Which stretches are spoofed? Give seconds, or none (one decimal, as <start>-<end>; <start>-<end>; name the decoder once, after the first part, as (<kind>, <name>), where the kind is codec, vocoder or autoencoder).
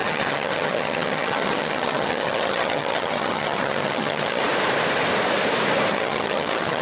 0.0-4.4 (vocoder, HiFi-GAN); 5.9-6.8